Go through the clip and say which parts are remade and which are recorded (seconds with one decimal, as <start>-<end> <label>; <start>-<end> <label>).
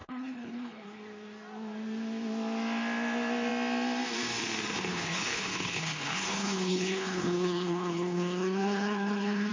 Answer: 0.0-1.0 remade; 1.0-4.9 recorded; 4.9-9.5 remade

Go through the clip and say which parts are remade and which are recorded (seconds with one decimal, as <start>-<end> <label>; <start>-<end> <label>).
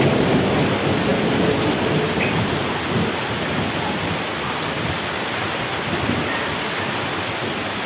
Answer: 0.0-7.9 recorded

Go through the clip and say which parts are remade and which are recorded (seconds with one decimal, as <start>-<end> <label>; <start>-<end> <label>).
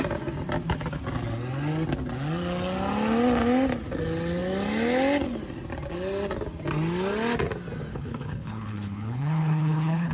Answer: 0.0-7.9 recorded; 7.9-10.1 remade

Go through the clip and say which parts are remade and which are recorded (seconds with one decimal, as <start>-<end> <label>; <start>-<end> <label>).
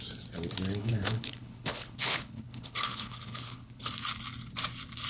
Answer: 0.0-0.8 recorded; 0.8-3.9 remade; 3.9-5.1 recorded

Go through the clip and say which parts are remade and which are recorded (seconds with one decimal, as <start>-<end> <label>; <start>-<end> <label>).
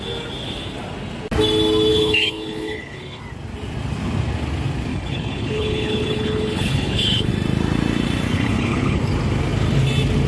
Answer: 0.0-1.9 recorded; 1.9-3.2 remade; 3.2-4.9 recorded; 4.9-7.3 remade; 7.3-8.3 recorded; 8.3-9.0 remade; 9.0-10.3 recorded